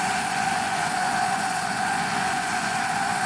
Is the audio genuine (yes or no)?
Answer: no